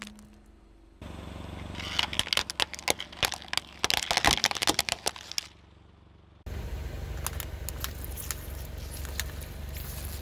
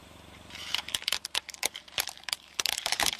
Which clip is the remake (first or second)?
second